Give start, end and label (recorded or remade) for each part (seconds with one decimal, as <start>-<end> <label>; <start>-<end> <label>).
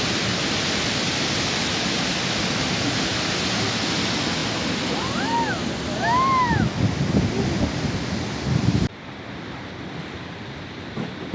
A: 0.0-11.3 recorded